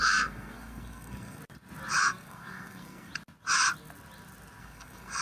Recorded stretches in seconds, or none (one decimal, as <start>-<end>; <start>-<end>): 1.4-2.0; 3.1-4.6